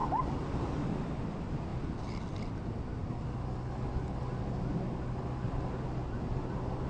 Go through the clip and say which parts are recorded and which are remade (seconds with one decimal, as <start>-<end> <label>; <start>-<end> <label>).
0.0-6.9 recorded